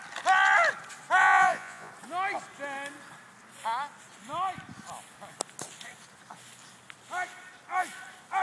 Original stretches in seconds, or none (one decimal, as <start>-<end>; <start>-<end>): 0.0-1.2; 1.9-8.4